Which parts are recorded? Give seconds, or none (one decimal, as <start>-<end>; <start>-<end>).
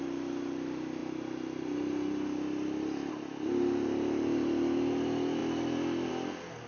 0.0-6.7